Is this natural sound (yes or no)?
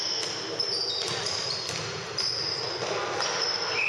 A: yes